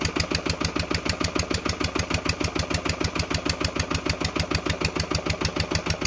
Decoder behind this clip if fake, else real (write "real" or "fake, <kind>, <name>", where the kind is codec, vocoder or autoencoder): real